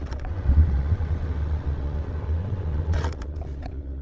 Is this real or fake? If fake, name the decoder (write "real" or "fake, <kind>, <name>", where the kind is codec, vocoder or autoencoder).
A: fake, vocoder, WaveNeXt